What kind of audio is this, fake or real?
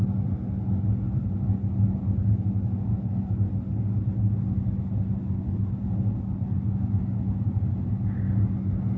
real